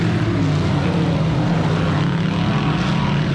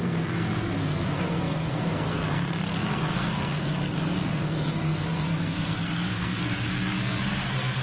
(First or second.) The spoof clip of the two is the second